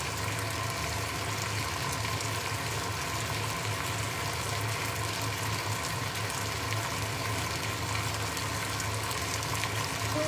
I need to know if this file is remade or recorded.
recorded